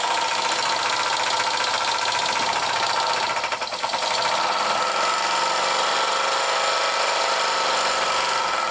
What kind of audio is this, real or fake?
real